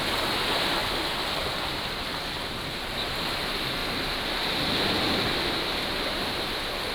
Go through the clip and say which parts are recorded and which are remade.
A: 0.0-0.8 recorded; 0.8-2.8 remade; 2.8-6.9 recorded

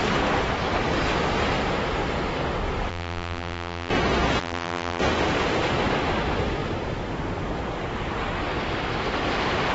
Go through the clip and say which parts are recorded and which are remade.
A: 0.0-2.9 recorded; 2.9-3.9 remade; 3.9-4.4 recorded; 4.4-5.0 remade; 5.0-9.7 recorded

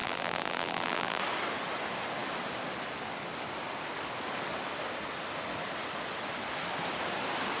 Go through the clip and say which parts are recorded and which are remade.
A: 0.0-1.2 remade; 1.2-7.6 recorded

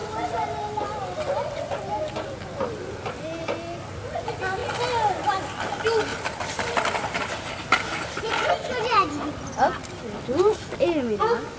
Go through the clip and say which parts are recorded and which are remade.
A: 0.0-6.1 recorded; 6.1-8.2 remade; 8.2-11.6 recorded

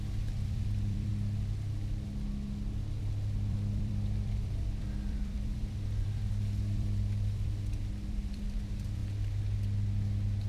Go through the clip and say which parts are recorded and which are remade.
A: 0.0-1.1 remade; 1.1-3.0 recorded; 3.0-9.0 remade; 9.0-10.5 recorded